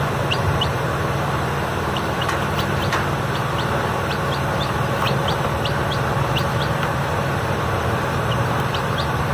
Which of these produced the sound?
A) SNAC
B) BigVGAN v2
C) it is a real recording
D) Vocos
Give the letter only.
B